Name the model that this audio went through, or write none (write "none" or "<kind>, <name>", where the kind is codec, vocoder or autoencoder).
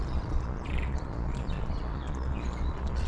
vocoder, Vocos